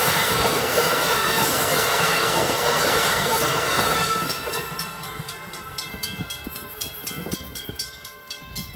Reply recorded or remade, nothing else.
remade